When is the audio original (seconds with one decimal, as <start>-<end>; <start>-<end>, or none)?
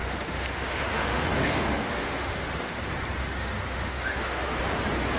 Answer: 2.8-3.2; 4.6-5.2